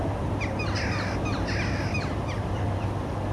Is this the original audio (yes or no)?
yes